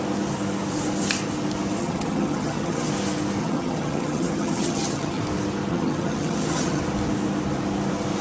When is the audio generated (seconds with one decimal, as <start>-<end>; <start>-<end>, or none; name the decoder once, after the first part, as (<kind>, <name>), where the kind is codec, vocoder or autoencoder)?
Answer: 1.8-2.9 (vocoder, HiFi-GAN); 3.4-5.2; 5.7-6.8